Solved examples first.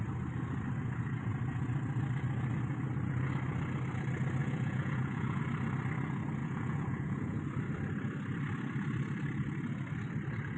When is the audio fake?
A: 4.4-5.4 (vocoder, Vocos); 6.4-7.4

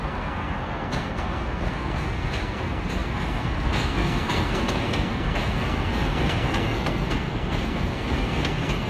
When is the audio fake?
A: 0.0-8.9 (codec, SNAC)

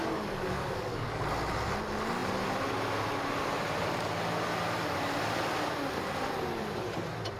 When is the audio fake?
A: 0.0-1.2 (codec, DAC)

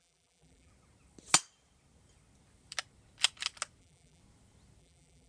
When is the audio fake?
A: 0.0-0.7 (vocoder, BigVGAN v2); 3.8-4.2; 4.8-5.3

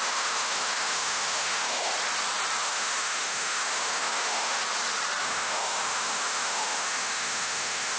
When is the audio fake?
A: 0.0-1.9 (autoencoder, DAC-VAE); 2.6-4.6; 5.2-8.0

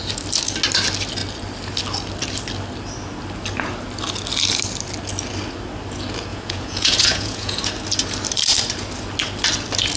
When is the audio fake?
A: 6.3-7.6 (vocoder, Vocos)

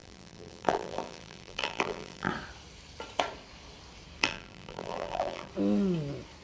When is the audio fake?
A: 0.0-2.3 (vocoder, BigVGAN v2); 4.2-5.5